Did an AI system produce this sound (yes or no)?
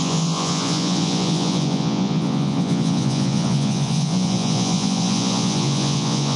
yes